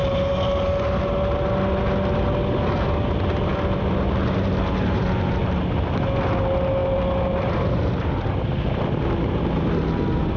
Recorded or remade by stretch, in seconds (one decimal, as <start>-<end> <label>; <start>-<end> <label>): 0.0-10.4 recorded